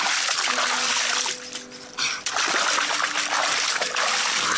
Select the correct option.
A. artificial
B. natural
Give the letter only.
B